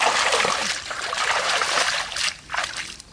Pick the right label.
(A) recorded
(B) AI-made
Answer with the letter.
A